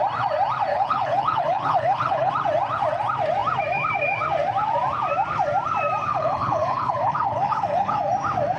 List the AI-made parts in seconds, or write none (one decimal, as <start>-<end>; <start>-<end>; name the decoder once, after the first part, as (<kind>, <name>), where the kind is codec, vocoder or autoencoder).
0.7-2.3 (codec, HILCodec); 6.1-8.0